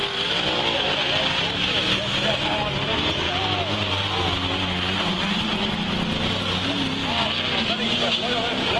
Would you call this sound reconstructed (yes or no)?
no